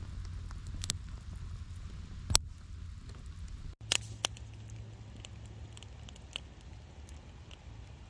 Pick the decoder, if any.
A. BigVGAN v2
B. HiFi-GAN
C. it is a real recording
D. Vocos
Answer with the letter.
C